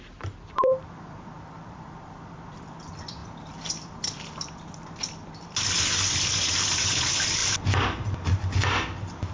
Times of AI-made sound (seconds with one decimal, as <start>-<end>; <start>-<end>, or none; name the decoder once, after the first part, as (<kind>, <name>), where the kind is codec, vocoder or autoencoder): 0.0-7.4 (vocoder, BigVGAN v2)